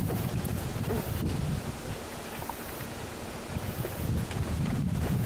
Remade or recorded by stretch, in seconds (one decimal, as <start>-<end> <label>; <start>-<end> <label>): 0.0-0.7 remade; 0.7-1.9 recorded; 1.9-5.3 remade